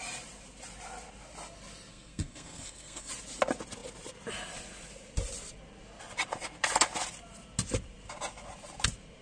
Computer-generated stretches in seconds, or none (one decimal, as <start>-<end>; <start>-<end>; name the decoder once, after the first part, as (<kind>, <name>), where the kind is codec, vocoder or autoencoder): 1.9-3.1 (codec, SNAC)